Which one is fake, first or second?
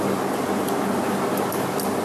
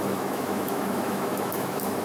second